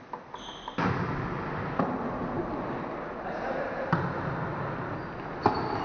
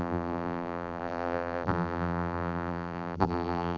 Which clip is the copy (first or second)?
second